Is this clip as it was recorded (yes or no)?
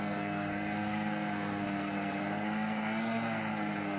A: no